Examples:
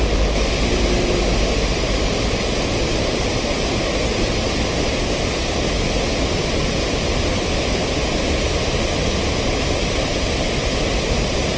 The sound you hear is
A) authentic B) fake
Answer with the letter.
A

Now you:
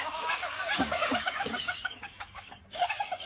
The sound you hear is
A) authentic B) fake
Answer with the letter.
B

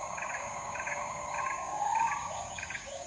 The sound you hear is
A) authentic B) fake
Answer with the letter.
B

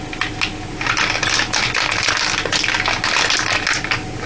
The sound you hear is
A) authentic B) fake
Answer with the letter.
A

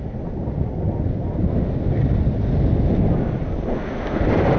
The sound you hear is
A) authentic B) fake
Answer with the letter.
A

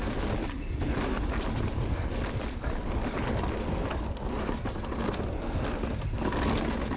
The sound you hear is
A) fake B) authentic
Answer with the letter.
B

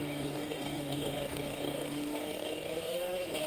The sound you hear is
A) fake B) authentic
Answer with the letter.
A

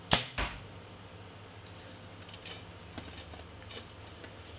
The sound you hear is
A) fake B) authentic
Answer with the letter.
B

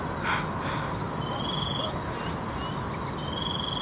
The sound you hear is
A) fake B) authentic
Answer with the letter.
B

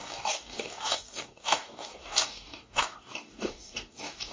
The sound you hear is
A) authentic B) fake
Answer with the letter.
B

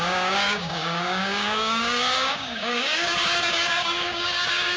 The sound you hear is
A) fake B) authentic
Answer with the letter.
A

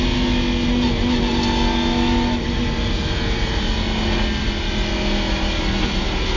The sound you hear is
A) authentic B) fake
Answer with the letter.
A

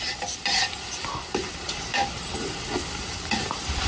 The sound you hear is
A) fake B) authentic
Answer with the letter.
B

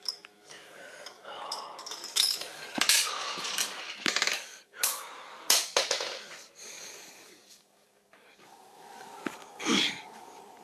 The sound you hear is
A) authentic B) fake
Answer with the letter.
B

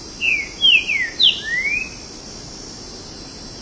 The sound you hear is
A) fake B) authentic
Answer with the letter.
B